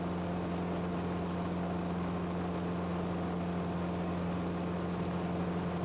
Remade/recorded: recorded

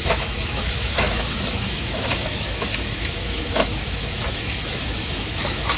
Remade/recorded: remade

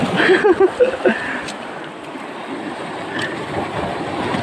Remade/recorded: recorded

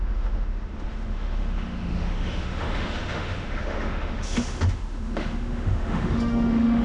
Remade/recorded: remade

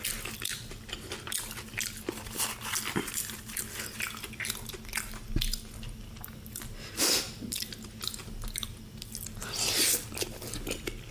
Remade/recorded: recorded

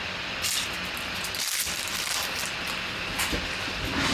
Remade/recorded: recorded